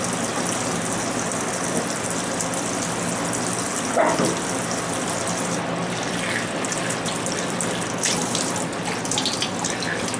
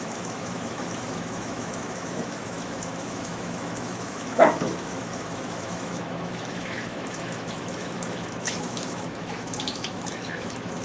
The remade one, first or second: second